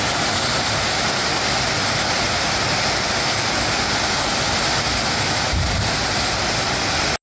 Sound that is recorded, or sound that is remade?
recorded